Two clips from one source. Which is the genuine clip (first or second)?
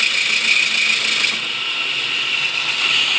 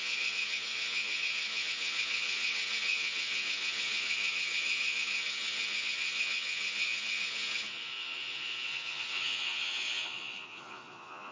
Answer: first